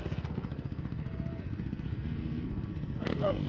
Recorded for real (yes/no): no